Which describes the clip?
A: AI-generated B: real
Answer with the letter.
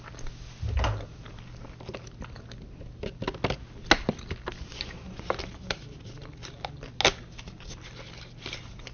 B